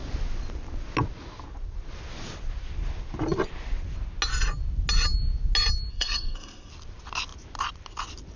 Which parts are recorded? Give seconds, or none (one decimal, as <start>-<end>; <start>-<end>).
0.0-5.9; 6.7-8.4